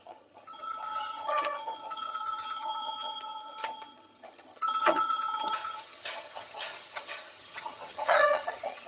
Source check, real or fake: fake